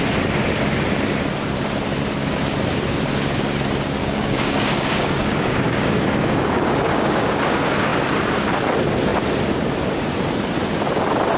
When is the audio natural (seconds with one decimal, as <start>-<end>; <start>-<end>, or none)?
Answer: 0.0-4.0; 7.4-11.4